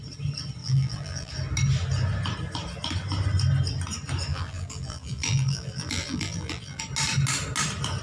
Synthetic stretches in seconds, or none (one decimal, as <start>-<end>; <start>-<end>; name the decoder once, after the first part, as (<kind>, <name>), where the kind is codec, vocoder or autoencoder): 0.6-1.3 (vocoder, BigVGAN v2); 4.3-6.8

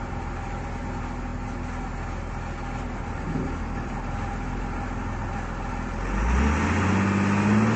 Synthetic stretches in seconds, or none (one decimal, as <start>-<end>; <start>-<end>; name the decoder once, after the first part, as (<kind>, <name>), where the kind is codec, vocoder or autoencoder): none

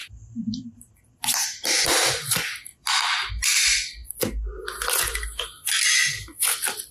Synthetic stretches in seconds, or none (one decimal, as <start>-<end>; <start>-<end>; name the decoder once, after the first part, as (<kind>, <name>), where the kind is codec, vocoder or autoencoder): 0.0-0.9 (vocoder, BigVGAN v2); 2.7-3.3

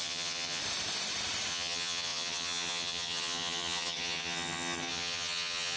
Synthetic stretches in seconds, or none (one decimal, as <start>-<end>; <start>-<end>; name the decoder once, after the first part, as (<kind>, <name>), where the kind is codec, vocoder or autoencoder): 0.0-0.6 (vocoder, HiFi-GAN); 1.5-5.8

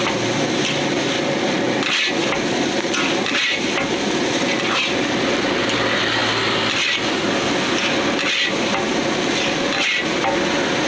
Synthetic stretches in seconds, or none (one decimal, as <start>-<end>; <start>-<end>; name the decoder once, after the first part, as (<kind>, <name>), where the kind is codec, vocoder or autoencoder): none